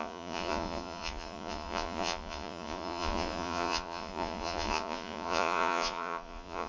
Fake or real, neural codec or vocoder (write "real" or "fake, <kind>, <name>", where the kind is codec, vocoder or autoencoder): fake, vocoder, Vocos